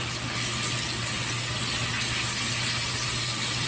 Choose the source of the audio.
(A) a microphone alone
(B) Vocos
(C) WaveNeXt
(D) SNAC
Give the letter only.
A